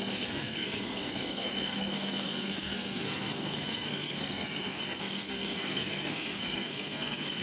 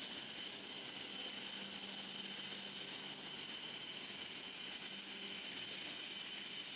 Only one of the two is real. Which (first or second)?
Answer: second